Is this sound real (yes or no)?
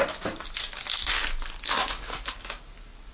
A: yes